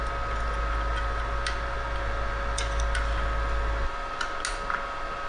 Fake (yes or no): no